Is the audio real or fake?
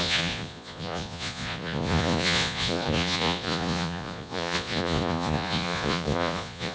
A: fake